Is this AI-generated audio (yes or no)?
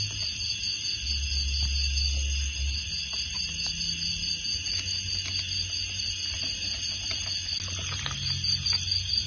no